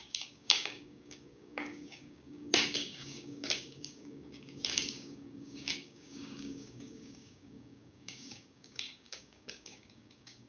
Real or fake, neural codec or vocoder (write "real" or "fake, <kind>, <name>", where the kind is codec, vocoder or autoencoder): fake, codec, DAC